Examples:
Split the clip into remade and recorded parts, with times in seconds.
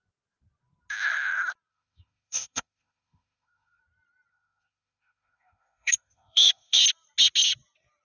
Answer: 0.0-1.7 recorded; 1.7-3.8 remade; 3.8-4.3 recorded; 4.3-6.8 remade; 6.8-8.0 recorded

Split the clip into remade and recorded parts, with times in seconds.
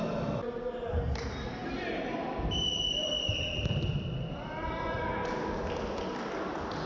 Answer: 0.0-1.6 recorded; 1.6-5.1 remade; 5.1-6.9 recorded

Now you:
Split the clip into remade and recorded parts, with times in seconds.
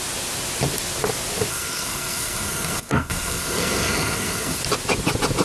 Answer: 0.0-1.5 recorded; 1.5-4.6 remade; 4.6-5.4 recorded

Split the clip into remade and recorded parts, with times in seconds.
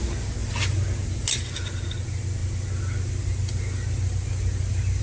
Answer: 0.0-5.0 recorded